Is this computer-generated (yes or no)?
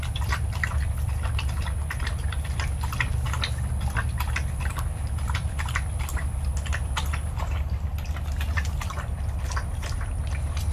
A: no